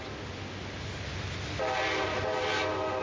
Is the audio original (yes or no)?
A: yes